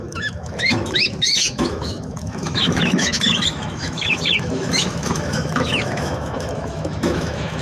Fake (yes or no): yes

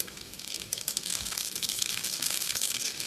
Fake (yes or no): yes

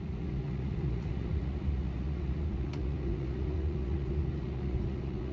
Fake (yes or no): yes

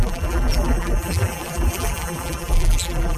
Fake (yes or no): yes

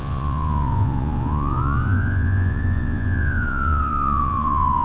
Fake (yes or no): yes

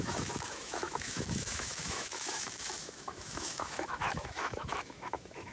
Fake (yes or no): yes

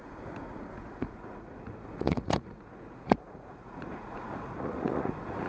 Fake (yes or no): yes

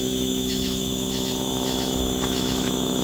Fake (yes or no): yes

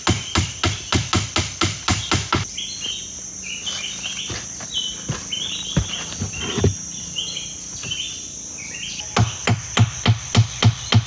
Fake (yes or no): no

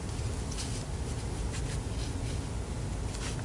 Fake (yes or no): no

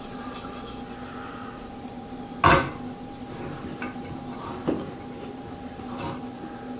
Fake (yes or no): no